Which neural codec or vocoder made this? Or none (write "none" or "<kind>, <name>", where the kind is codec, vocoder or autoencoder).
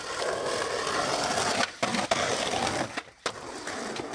none